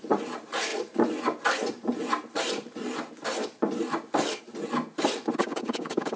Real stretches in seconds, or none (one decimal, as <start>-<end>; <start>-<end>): 0.0-5.4